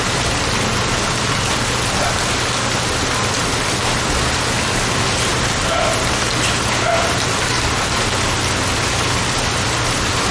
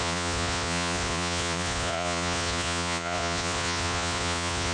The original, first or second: first